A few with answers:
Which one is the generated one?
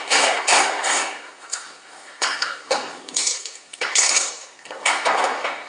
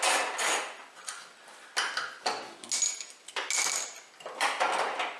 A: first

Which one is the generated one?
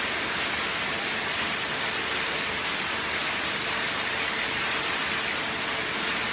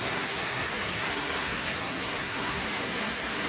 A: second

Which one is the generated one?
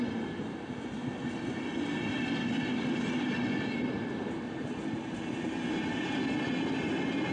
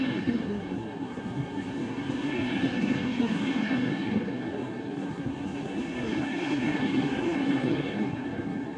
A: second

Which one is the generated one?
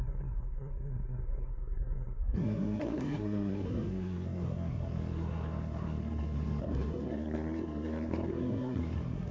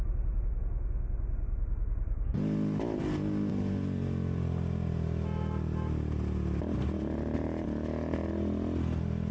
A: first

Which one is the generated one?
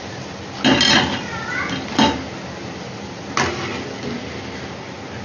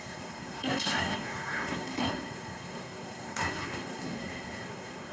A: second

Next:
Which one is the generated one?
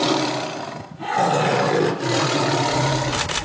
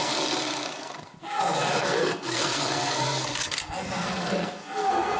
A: second